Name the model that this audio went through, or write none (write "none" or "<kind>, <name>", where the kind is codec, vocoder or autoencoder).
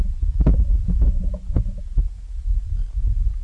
none